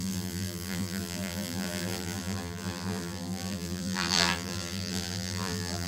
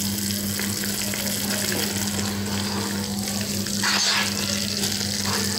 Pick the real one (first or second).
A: second